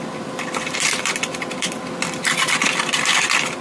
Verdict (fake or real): real